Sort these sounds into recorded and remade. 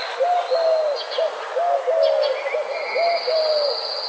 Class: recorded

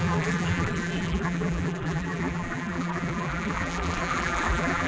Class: remade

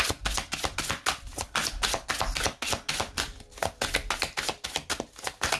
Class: recorded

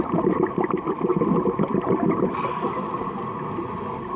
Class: recorded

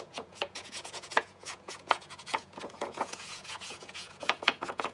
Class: remade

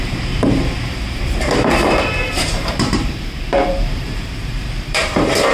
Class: remade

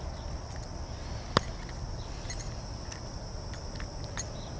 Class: recorded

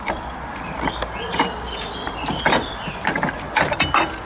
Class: recorded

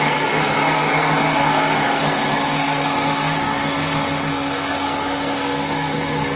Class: remade